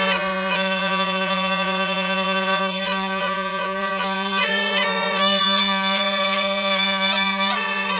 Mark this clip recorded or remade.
remade